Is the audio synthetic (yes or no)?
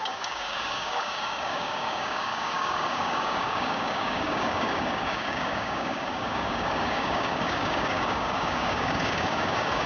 yes